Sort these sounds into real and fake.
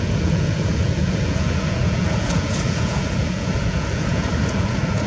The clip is fake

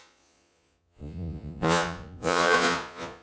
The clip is fake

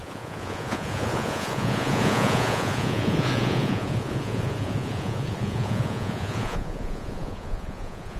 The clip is fake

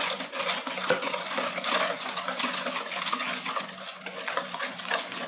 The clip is fake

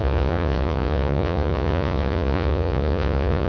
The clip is fake